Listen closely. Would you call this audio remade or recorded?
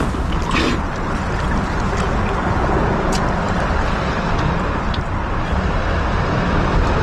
recorded